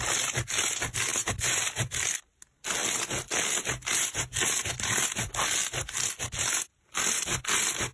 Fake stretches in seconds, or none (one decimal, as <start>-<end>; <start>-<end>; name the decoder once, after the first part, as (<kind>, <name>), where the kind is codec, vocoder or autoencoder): 1.1-2.0 (vocoder, BigVGAN v2)